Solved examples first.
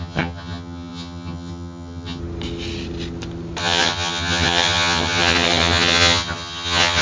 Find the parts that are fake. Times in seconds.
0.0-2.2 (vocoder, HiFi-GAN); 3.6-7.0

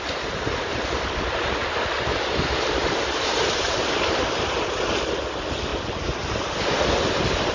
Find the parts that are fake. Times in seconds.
0.7-4.5 (vocoder, BigVGAN v2)